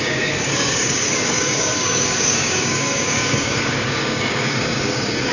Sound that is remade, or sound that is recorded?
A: remade